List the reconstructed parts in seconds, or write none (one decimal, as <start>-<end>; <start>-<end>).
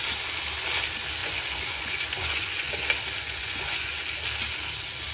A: 1.2-2.7; 3.2-4.0